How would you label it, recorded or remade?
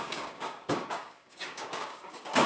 remade